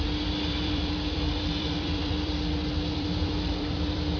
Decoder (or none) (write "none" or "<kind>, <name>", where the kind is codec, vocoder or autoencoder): vocoder, BigVGAN v2